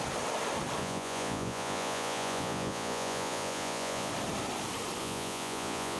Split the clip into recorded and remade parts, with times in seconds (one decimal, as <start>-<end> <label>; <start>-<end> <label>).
0.0-0.8 recorded; 0.8-4.1 remade; 4.1-5.0 recorded; 5.0-6.0 remade